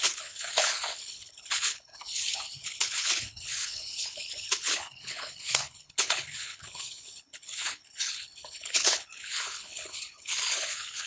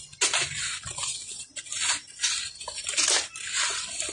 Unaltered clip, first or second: second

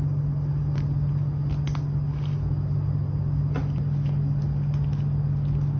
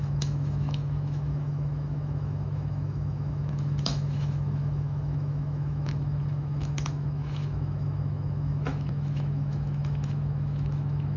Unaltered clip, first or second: first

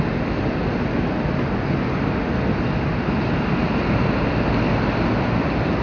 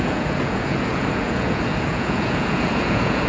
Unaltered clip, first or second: first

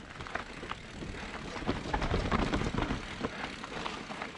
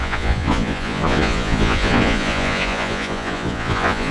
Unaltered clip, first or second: first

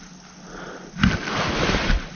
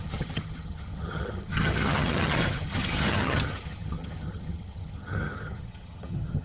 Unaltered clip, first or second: first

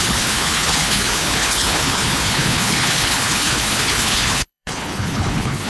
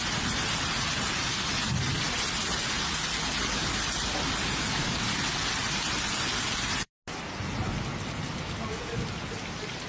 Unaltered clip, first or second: second